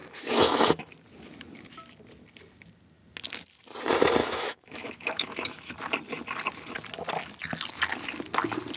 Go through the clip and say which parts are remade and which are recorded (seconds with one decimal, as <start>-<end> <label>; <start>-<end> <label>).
0.0-0.9 remade; 0.9-4.2 recorded; 4.2-5.7 remade; 5.7-8.8 recorded